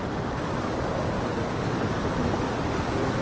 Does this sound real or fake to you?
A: real